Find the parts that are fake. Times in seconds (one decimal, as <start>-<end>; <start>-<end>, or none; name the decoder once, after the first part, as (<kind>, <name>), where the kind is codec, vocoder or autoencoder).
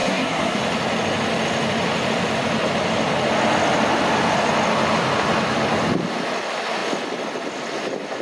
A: 0.0-0.6 (codec, SNAC)